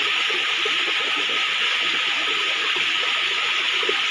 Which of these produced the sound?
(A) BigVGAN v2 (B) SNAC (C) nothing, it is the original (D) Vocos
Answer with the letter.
C